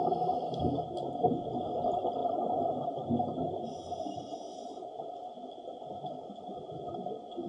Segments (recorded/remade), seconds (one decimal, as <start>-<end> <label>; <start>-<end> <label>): 0.0-7.5 recorded